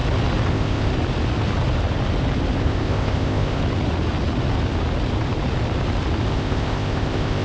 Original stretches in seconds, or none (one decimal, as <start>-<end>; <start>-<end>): 0.0-0.5; 0.9-2.6; 3.6-6.3